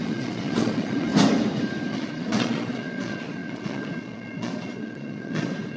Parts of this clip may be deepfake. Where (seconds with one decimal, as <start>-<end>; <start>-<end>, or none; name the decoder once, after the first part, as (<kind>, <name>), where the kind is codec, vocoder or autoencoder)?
0.0-1.1 (vocoder, Vocos); 1.9-5.8